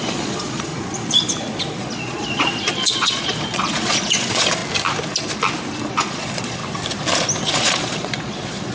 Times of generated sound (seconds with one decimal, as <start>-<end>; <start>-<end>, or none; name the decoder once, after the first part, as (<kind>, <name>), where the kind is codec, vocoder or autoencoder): 0.0-0.7 (vocoder, Vocos); 1.6-4.6; 5.9-6.6; 7.5-8.7